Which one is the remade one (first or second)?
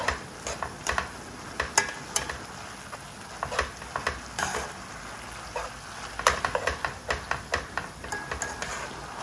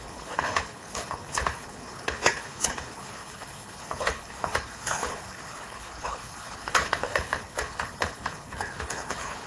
second